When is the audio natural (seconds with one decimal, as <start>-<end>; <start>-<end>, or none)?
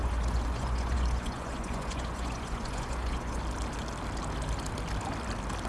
3.4-5.7